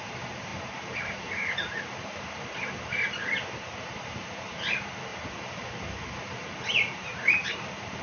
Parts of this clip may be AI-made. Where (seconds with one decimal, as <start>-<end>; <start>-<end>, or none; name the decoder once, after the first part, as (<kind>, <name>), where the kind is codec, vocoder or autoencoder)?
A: 0.0-8.0 (vocoder, BigVGAN v2)